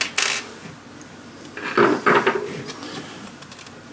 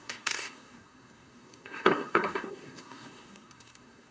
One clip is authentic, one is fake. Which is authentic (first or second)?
first